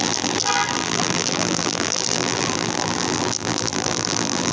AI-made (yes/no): yes